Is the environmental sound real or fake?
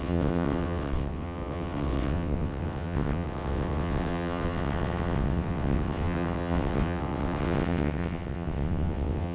fake